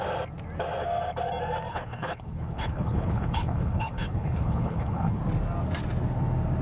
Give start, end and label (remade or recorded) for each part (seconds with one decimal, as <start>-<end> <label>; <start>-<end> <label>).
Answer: 0.0-1.7 recorded; 1.7-5.2 remade; 5.2-6.6 recorded